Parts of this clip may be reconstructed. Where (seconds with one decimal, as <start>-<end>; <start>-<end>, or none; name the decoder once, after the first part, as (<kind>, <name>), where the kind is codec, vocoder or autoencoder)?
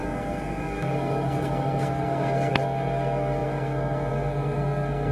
0.0-5.1 (codec, SNAC)